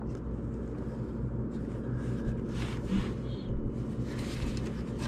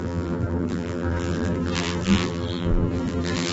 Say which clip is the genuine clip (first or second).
first